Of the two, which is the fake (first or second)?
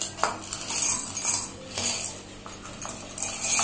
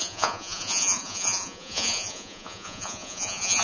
second